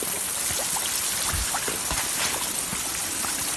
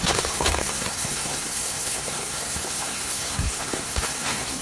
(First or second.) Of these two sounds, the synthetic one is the second